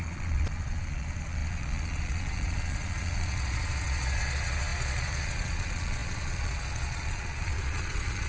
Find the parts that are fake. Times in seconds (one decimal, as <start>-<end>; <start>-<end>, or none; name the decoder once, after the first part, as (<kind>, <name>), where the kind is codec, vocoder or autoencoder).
0.0-8.3 (vocoder, Vocos)